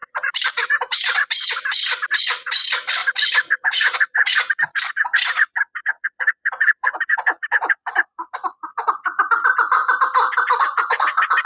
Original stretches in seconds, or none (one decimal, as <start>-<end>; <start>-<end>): 2.2-3.0; 4.9-5.8; 8.3-11.5